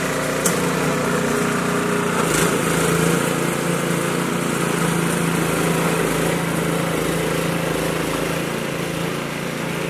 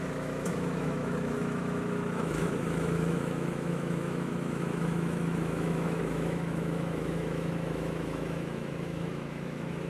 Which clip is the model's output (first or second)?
second